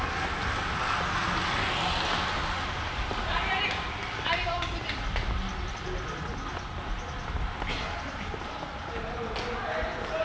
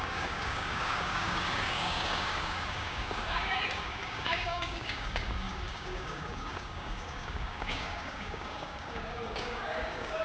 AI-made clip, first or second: second